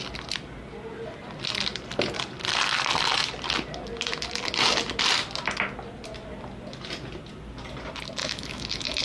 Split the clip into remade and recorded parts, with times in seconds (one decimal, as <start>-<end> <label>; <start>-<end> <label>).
0.0-8.2 recorded; 8.2-9.0 remade